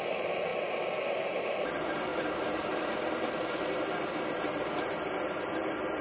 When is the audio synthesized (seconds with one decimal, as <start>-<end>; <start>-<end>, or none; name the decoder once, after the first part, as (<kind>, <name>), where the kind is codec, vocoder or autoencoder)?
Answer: 0.0-0.5 (vocoder, BigVGAN v2); 1.4-2.1